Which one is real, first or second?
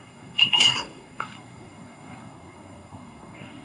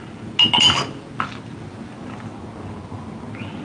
second